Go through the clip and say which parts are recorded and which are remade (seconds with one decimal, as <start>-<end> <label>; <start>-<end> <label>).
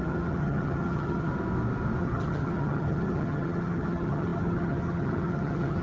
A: 0.0-1.3 remade; 1.3-2.0 recorded; 2.0-5.8 remade